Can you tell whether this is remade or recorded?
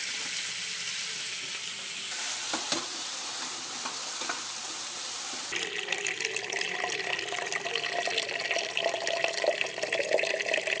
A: recorded